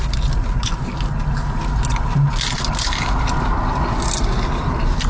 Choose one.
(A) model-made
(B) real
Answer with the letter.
B